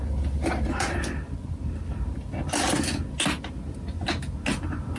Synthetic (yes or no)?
no